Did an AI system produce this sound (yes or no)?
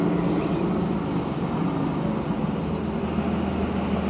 no